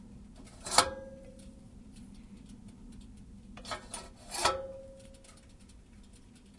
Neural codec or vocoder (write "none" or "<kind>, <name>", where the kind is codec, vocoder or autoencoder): none